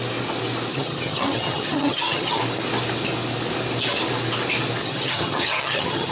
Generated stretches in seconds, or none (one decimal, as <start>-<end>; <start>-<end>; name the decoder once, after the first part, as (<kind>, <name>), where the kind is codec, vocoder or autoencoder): 0.7-2.4 (vocoder, HiFi-GAN); 4.8-6.1